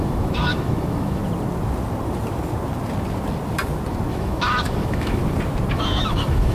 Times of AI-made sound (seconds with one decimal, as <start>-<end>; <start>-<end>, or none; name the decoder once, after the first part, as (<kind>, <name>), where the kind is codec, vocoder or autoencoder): 0.0-1.2 (autoencoder, DAC-VAE); 4.1-5.2; 5.7-6.5